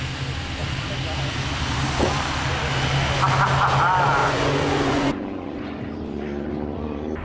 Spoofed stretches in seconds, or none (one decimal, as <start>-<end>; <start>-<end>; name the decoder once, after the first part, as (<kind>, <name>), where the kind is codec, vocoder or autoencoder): 4.2-7.2 (vocoder, Vocos)